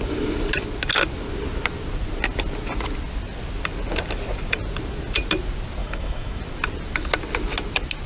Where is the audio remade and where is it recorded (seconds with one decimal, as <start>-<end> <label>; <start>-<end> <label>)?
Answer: 0.0-5.8 recorded; 5.8-6.4 remade; 6.4-8.1 recorded